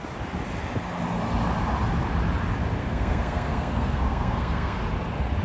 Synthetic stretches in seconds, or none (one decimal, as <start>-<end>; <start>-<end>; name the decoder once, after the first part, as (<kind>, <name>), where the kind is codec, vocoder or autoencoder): 2.8-4.8 (codec, SNAC)